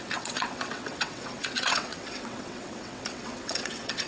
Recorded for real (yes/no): no